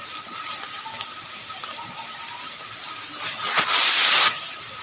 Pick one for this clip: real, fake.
real